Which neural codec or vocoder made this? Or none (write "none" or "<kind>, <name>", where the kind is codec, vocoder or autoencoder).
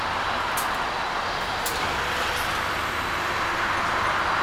none